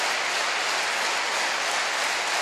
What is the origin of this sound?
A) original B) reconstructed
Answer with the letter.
A